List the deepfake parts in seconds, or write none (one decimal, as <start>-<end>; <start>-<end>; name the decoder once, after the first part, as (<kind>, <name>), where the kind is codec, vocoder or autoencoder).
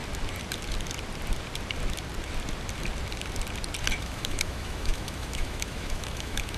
4.0-6.6 (autoencoder, DAC-VAE)